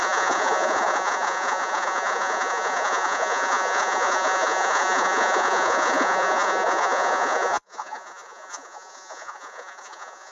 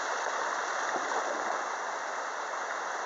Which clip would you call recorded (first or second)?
second